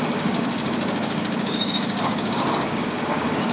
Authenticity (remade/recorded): remade